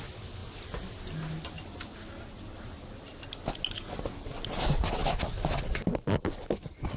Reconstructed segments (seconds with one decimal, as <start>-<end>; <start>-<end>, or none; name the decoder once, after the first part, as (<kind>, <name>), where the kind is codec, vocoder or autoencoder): none